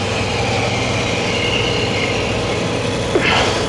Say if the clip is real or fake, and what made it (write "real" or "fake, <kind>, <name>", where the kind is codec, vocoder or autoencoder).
real